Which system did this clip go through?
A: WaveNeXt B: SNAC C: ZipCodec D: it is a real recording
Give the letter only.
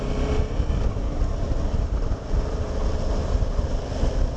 D